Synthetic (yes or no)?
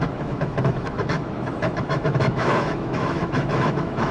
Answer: yes